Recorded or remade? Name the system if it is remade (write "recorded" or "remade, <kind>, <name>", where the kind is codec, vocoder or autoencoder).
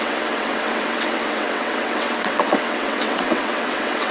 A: remade, vocoder, WaveNeXt